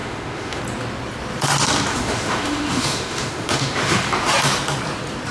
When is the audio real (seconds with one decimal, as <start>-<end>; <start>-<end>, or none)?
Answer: 0.6-1.9; 4.3-5.3